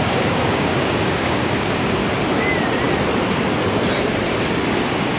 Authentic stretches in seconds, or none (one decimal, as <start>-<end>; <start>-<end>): 2.0-5.2